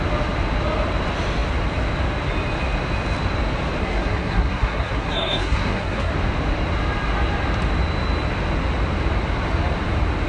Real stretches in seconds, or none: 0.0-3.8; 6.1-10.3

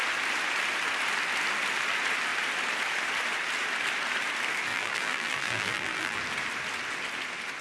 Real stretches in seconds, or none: 0.0-4.7; 6.2-7.6